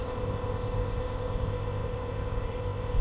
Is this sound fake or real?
fake